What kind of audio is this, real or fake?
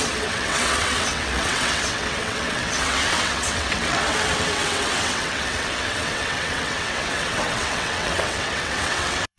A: fake